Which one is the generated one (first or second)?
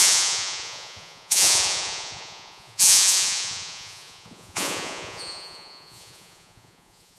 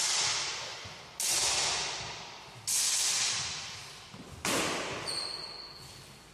first